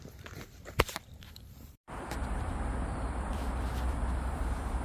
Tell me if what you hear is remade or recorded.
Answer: remade